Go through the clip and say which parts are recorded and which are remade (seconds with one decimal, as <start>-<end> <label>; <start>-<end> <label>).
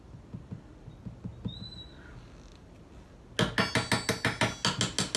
0.0-5.2 recorded